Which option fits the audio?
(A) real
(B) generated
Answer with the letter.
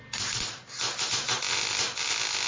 A